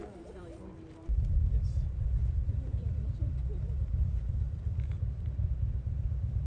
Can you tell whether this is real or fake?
fake